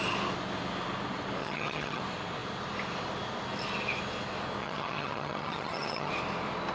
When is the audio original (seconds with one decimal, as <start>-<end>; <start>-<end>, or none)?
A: 0.0-1.4; 2.0-4.6; 6.1-6.7